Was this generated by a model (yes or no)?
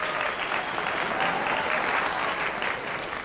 no